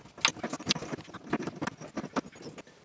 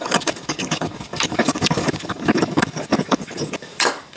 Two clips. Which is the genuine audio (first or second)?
first